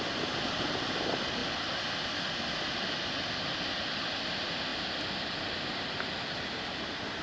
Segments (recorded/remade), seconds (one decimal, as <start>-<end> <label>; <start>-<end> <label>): 0.0-7.2 recorded